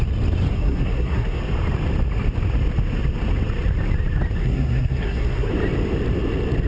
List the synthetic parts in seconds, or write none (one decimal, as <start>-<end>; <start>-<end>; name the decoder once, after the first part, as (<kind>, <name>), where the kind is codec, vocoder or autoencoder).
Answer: 0.5-1.4 (codec, SNAC); 4.4-5.5